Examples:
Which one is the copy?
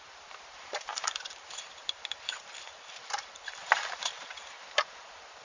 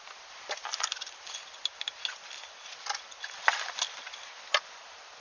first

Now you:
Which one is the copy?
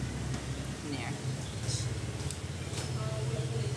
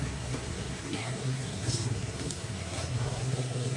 second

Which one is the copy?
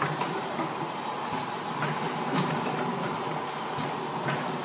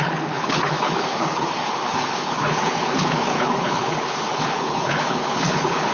second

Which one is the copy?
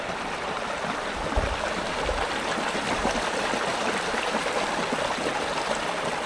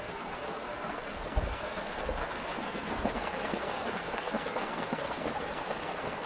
second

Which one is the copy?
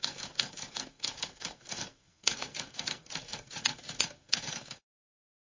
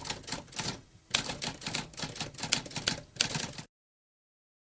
first